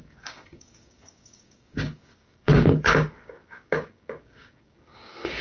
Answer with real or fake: fake